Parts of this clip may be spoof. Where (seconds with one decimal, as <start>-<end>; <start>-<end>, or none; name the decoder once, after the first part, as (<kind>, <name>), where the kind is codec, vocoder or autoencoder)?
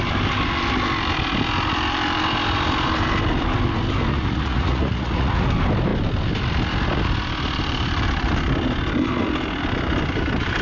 4.1-5.5 (vocoder, Vocos)